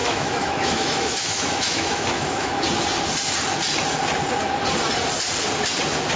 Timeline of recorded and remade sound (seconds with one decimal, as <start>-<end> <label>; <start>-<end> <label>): 0.0-2.6 remade; 2.6-6.2 recorded